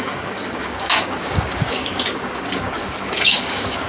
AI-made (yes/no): yes